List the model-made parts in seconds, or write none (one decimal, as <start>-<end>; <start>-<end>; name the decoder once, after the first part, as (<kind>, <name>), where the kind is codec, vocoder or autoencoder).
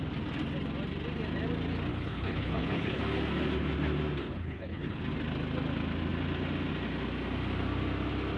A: 1.9-3.0 (codec, HILCodec); 4.2-5.0